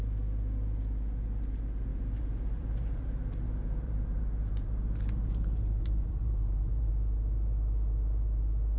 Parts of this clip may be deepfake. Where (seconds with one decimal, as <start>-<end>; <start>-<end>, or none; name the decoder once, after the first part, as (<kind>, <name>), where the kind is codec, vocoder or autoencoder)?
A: 1.9-6.9 (vocoder, BigVGAN v2)